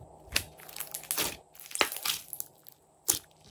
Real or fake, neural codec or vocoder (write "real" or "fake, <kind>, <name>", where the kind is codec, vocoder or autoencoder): real